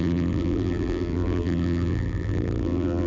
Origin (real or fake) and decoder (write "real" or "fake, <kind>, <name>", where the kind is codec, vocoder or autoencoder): fake, vocoder, BigVGAN v2